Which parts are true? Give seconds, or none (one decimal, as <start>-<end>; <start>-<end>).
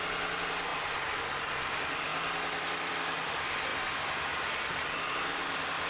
0.0-5.9